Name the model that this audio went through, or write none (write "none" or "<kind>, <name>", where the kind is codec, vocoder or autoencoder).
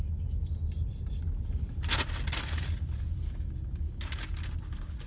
none